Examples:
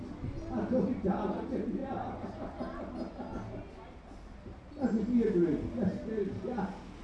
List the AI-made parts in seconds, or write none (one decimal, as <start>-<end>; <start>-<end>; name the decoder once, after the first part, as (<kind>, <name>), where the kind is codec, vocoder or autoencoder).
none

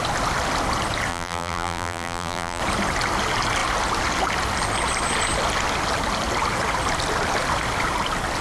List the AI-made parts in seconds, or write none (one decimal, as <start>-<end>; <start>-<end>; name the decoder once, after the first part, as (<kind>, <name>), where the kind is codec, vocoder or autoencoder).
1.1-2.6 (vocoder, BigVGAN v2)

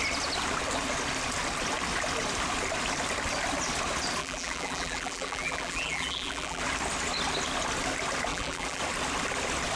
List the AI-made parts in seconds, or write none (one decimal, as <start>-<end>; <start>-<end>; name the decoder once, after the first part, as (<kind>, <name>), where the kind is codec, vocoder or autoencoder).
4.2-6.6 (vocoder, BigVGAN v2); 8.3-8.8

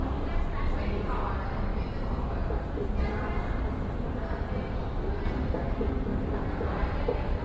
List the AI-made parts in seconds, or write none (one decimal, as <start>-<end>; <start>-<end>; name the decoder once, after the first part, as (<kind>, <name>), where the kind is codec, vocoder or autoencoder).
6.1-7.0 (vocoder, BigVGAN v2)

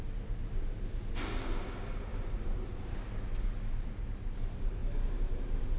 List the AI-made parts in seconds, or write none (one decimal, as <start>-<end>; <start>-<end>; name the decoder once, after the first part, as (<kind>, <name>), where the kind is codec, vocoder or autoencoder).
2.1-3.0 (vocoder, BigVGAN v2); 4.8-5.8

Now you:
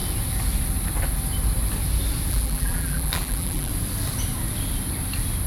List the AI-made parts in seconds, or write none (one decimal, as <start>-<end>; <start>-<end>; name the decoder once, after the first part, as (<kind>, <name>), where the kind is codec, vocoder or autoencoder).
2.3-3.7 (vocoder, BigVGAN v2)

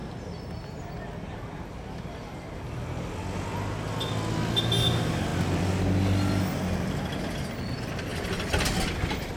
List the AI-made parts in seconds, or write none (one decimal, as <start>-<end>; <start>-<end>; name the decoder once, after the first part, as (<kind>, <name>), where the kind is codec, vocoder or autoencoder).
0.0-0.9 (vocoder, BigVGAN v2)